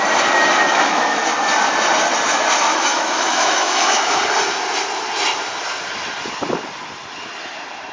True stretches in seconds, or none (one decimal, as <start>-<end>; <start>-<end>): 0.0-0.7; 1.2-2.7; 4.2-7.9